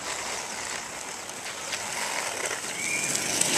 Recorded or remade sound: recorded